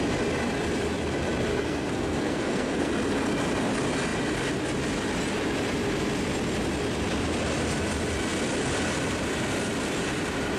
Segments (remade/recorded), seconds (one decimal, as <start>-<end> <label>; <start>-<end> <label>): 0.0-1.5 recorded; 1.5-2.9 remade; 2.9-10.6 recorded